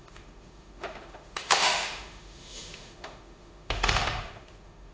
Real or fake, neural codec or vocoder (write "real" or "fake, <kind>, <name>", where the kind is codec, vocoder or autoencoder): fake, autoencoder, DAC-VAE